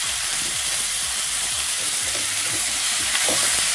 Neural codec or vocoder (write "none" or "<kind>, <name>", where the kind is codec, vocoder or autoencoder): vocoder, BigVGAN v2